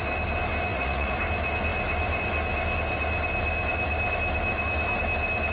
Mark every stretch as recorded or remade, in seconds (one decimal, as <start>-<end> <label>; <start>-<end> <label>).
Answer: 0.0-0.7 recorded; 0.7-1.2 remade; 1.2-5.5 recorded